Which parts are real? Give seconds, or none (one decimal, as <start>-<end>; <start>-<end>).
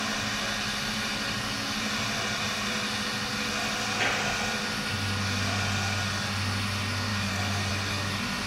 0.0-7.1; 7.7-8.5